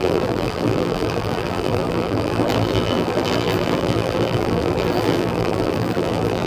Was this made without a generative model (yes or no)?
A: no